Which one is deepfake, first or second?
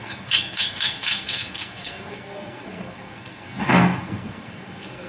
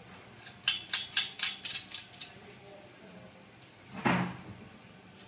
first